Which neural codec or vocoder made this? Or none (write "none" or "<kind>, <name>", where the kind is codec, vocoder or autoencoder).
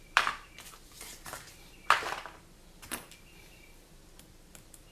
vocoder, BigVGAN v2